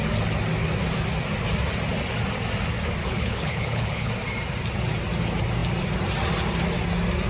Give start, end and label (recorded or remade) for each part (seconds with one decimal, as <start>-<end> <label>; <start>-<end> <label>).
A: 0.0-3.0 recorded; 3.0-4.1 remade; 4.1-7.3 recorded